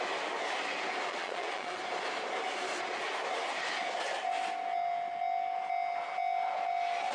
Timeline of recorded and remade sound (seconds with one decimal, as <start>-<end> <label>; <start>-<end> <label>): 0.0-1.1 recorded; 1.1-1.8 remade; 1.8-7.1 recorded